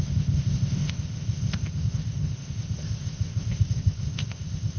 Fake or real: fake